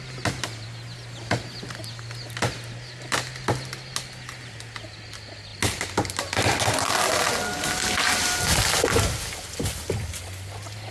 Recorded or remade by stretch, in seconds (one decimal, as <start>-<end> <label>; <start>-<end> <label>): 0.0-10.9 recorded